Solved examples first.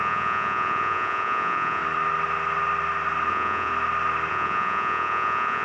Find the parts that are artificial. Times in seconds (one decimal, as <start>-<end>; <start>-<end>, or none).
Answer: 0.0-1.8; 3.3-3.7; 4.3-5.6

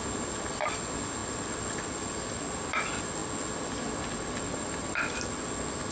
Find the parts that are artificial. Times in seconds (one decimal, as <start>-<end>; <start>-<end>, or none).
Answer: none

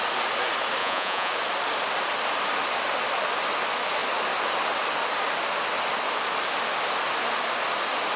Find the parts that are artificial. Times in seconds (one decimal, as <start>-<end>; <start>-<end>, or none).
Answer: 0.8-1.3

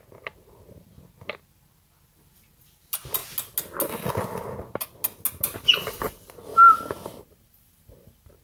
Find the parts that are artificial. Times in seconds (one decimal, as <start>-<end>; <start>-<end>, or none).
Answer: 6.5-8.4

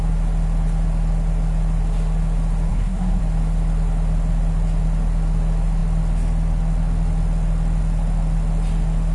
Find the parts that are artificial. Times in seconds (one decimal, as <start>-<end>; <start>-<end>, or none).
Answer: 2.7-3.2

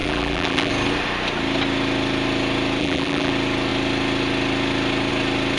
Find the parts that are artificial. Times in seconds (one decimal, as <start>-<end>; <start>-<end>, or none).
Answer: 0.0-0.7; 2.8-3.3